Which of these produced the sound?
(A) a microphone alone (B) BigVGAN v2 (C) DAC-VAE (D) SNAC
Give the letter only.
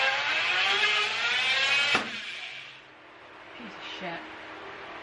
A